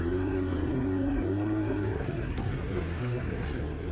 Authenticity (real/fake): fake